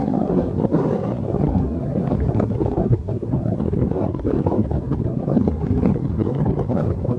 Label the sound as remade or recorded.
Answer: remade